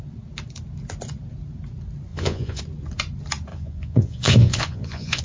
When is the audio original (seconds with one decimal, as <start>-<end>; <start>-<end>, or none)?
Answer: 0.0-2.1; 2.6-3.5